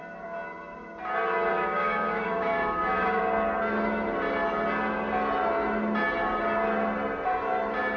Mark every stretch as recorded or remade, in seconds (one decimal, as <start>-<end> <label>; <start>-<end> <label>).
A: 0.0-1.5 recorded; 1.5-3.2 remade; 3.2-8.0 recorded